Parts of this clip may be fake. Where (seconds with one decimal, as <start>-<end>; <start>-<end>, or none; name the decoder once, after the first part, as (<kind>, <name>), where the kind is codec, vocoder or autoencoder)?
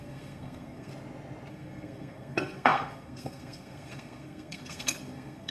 0.0-0.9 (codec, SNAC); 1.5-5.5